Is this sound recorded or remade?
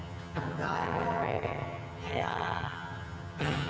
remade